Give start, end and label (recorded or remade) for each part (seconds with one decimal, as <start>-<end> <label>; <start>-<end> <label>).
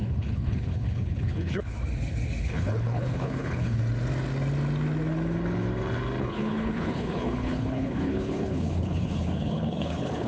0.0-1.8 remade; 1.8-2.4 recorded; 2.4-3.8 remade; 3.8-6.2 recorded; 6.2-10.3 remade